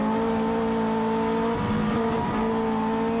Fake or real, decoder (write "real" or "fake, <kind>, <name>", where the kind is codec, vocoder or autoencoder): real